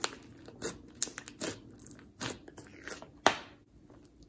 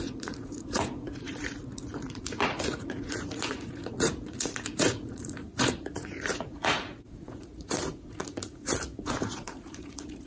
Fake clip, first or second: second